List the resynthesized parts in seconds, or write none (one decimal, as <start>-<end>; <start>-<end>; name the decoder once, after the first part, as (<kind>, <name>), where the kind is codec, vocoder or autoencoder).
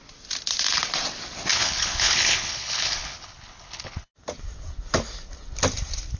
1.5-4.1 (codec, HILCodec)